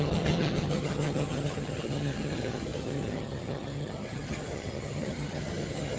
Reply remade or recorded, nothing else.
remade